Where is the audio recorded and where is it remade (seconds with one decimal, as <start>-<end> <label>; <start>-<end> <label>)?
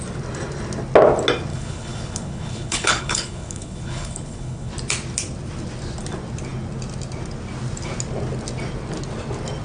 0.0-1.5 recorded; 1.5-4.7 remade; 4.7-9.6 recorded